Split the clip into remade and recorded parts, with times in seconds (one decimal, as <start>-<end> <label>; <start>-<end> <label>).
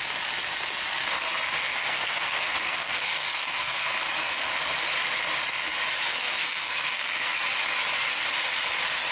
0.0-1.6 recorded; 1.6-4.4 remade; 4.4-6.1 recorded; 6.1-7.3 remade; 7.3-9.1 recorded